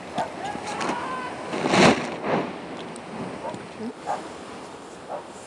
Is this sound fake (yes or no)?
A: no